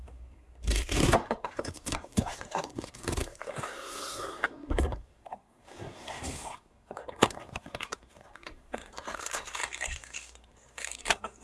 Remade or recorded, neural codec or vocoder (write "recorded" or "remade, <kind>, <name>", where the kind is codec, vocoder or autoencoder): remade, codec, SNAC